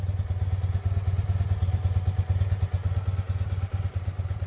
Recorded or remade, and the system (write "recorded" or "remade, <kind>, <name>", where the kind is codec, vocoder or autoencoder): recorded